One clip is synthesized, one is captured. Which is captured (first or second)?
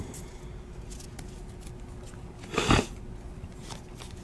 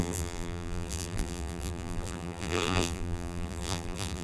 first